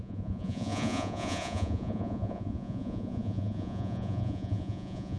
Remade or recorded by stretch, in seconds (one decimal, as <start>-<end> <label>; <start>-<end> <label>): 0.0-5.2 remade